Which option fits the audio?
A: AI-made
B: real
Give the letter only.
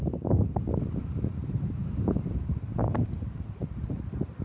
A